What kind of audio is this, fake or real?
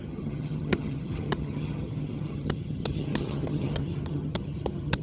fake